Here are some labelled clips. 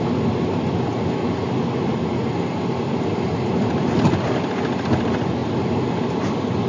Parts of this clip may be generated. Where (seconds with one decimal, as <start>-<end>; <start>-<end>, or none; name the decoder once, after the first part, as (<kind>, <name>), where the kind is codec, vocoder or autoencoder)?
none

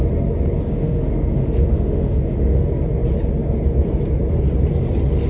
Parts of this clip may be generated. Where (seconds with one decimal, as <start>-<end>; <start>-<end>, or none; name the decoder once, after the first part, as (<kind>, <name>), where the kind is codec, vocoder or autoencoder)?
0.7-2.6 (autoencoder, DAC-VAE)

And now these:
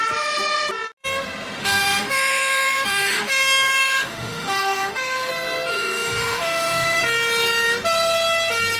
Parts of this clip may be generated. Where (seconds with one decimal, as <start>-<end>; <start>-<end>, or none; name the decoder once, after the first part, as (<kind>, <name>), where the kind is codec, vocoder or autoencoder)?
1.6-5.3 (autoencoder, DAC-VAE); 5.7-7.0

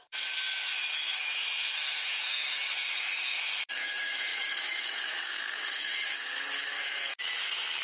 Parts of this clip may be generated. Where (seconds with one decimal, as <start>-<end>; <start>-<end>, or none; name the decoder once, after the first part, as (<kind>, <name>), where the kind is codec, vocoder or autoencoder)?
0.0-7.8 (autoencoder, DAC-VAE)

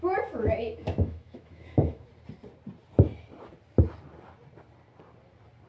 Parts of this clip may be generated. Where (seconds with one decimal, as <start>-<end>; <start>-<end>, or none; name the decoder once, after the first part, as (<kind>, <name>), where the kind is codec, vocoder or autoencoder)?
0.0-2.1 (autoencoder, DAC-VAE)

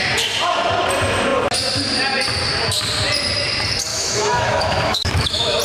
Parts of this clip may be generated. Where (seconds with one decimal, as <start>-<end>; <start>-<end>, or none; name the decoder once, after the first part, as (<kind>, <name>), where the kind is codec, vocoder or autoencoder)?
3.9-5.6 (autoencoder, DAC-VAE)

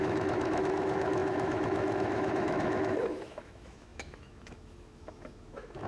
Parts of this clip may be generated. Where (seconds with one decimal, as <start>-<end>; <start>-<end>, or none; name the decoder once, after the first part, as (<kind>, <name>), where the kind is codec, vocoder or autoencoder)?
0.0-5.9 (autoencoder, DAC-VAE)